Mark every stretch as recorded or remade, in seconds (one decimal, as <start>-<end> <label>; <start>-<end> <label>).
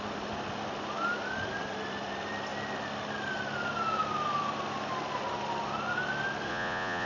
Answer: 0.0-6.5 recorded; 6.5-7.1 remade